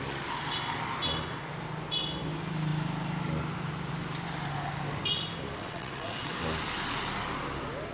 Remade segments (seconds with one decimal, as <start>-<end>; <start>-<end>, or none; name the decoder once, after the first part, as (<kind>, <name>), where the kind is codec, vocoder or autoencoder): 5.6-6.4 (vocoder, WaveNeXt)